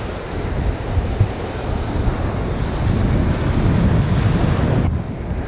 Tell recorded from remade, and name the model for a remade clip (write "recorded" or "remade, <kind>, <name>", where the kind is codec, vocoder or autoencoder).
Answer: recorded